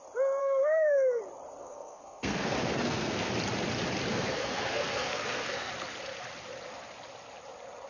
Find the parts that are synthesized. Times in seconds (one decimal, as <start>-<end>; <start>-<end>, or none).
0.4-1.2; 1.6-3.3; 4.1-5.7